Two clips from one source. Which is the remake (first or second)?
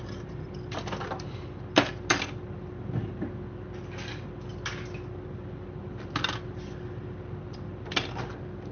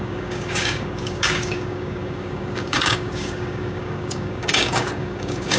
second